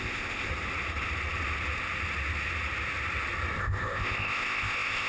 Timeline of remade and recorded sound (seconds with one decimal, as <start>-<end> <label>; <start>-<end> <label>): 0.0-0.5 remade; 0.5-3.6 recorded; 3.6-5.1 remade